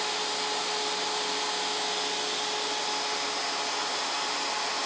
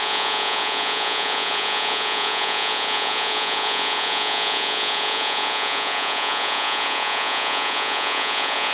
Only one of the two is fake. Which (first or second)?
second